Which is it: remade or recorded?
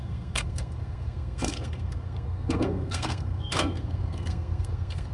remade